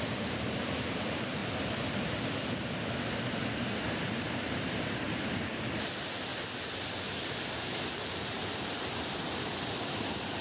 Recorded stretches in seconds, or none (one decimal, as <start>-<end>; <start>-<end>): 1.4-4.7; 6.3-7.5; 8.4-10.4